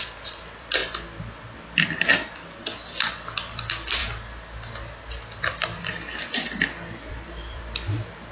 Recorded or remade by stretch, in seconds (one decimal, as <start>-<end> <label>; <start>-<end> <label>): 0.0-0.8 remade; 0.8-2.0 recorded; 2.0-4.0 remade; 4.0-6.2 recorded; 6.2-8.3 remade

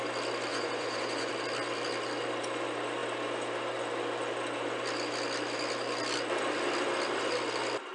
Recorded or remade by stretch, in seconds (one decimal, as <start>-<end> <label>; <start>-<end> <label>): 0.0-0.5 recorded; 0.5-1.3 remade; 1.3-7.9 recorded

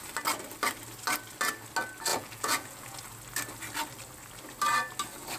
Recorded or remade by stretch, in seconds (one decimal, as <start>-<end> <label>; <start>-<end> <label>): 0.0-2.1 recorded; 2.1-3.0 remade; 3.0-5.4 recorded